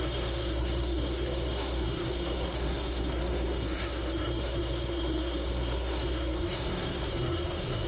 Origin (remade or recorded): remade